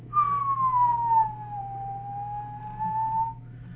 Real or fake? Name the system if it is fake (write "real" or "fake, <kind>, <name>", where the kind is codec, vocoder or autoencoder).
real